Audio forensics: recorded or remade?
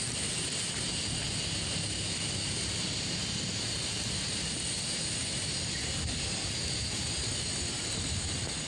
recorded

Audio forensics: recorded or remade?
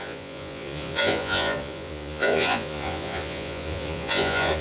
remade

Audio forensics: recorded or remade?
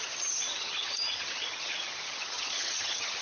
remade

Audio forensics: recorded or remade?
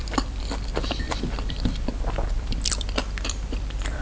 remade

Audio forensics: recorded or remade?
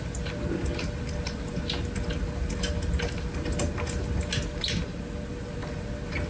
recorded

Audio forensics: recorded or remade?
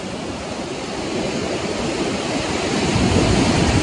recorded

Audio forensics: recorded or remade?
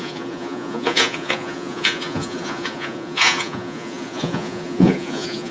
remade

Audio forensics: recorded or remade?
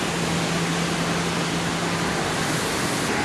recorded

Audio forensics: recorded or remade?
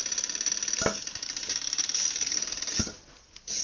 recorded